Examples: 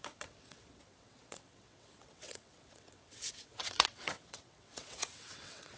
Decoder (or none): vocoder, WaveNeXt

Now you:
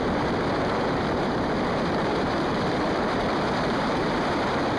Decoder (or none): vocoder, BigVGAN v2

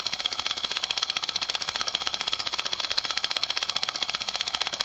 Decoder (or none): codec, SNAC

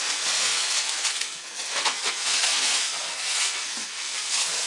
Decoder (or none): codec, SNAC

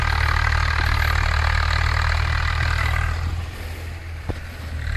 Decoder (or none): none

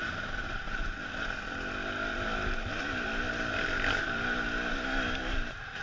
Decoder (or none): none